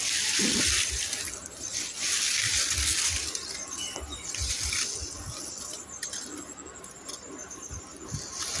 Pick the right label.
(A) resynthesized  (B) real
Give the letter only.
B